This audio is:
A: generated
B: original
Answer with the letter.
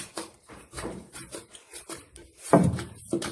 A